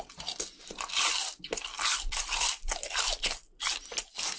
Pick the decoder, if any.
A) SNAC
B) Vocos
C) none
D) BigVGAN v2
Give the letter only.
C